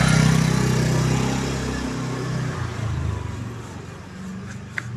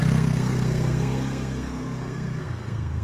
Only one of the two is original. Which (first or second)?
first